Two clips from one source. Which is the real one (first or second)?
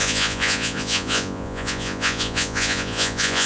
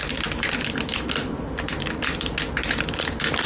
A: second